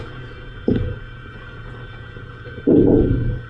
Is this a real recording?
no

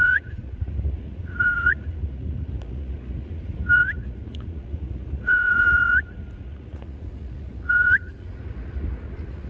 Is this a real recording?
no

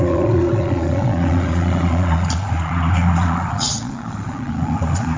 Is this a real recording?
no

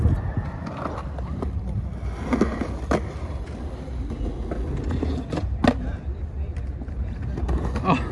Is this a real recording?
yes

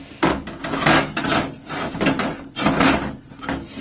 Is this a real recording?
yes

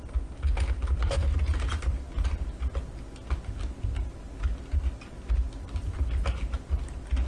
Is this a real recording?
yes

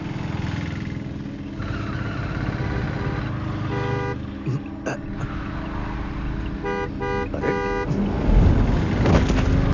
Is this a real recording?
yes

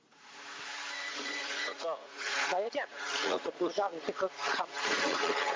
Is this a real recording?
no